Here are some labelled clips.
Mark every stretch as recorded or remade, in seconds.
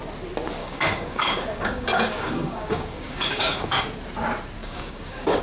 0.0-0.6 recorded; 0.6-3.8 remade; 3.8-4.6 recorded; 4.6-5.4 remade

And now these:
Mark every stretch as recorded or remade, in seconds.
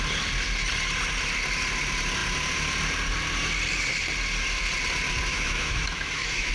0.0-5.3 recorded; 5.3-6.5 remade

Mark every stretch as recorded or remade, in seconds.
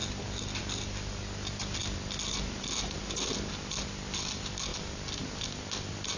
0.0-6.2 recorded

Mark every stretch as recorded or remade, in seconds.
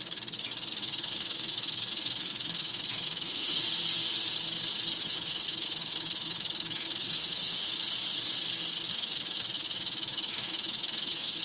0.0-0.8 recorded; 0.8-3.6 remade; 3.6-5.0 recorded; 5.0-7.7 remade; 7.7-8.9 recorded; 8.9-11.4 remade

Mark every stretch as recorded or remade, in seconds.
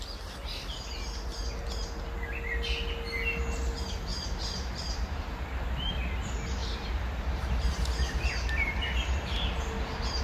0.0-4.1 recorded; 4.1-5.2 remade; 5.2-6.6 recorded; 6.6-10.2 remade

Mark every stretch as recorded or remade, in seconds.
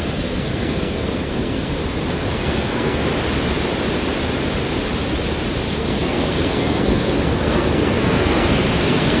0.0-1.8 remade; 1.8-2.3 recorded; 2.3-3.1 remade; 3.1-5.7 recorded; 5.7-9.2 remade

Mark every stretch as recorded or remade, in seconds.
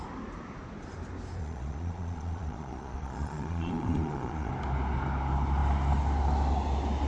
0.0-1.4 recorded; 1.4-4.5 remade; 4.5-7.1 recorded